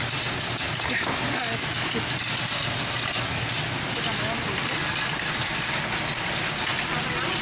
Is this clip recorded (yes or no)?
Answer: yes